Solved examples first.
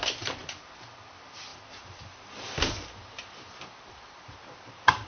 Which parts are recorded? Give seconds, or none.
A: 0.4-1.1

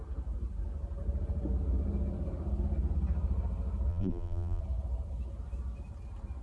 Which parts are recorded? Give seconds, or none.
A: 0.0-3.9; 4.6-6.4